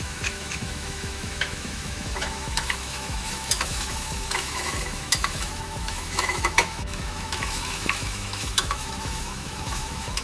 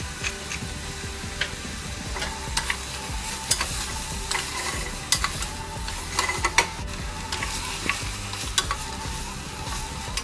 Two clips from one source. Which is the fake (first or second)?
first